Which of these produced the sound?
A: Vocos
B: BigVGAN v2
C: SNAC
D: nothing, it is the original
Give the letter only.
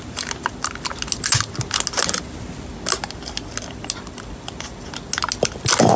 D